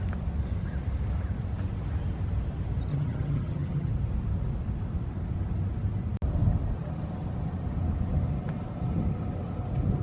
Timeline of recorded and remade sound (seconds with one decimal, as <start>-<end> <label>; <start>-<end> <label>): 0.0-2.9 recorded; 2.9-3.9 remade; 3.9-10.0 recorded